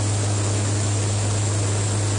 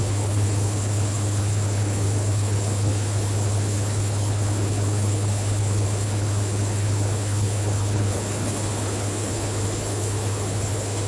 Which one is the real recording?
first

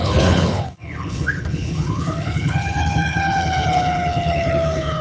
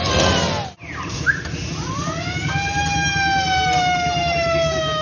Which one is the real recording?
second